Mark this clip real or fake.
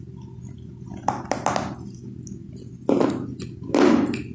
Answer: real